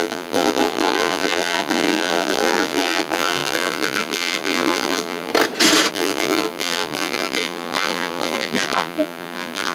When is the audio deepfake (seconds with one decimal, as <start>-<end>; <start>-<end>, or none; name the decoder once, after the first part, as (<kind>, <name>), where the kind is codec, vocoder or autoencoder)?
0.0-5.3 (vocoder, BigVGAN v2); 5.9-9.7